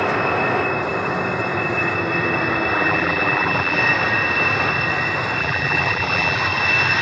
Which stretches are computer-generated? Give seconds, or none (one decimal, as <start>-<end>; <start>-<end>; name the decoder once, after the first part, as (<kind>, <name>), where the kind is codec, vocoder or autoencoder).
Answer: 2.7-3.8 (vocoder, BigVGAN v2); 5.4-6.4

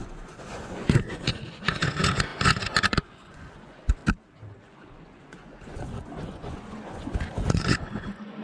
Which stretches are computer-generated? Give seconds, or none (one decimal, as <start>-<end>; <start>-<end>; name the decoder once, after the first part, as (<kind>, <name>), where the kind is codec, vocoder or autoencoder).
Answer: 0.0-4.0 (vocoder, Vocos); 4.6-8.4

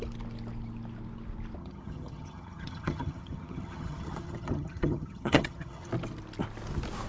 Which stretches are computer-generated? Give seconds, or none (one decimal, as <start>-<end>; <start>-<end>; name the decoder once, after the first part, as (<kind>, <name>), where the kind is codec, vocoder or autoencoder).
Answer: 1.6-5.9 (vocoder, HiFi-GAN)

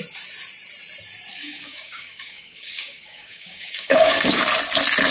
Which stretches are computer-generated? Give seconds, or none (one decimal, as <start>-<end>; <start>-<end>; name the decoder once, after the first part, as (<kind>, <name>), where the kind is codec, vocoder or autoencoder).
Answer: 1.4-4.5 (codec, DAC)

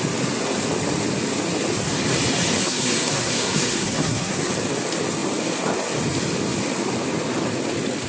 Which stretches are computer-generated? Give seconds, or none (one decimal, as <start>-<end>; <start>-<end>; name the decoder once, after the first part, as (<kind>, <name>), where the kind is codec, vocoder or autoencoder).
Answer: 2.6-4.5 (codec, SNAC)

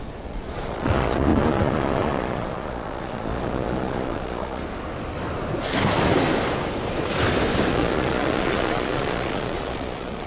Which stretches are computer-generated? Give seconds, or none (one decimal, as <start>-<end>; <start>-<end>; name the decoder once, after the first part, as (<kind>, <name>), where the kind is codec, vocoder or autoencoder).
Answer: 0.0-4.6 (vocoder, Vocos); 7.7-10.3